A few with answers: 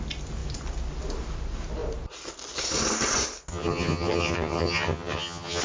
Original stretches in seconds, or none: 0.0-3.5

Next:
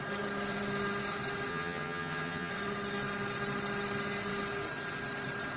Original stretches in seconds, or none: 0.0-1.5; 2.5-5.6

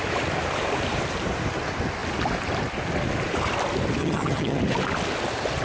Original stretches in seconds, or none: 0.0-4.0; 4.6-5.6

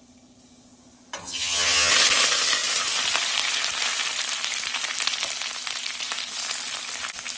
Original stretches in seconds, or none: 0.0-1.2; 1.9-7.4